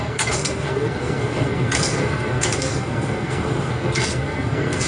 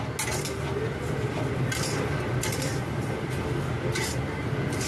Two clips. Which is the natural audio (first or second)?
second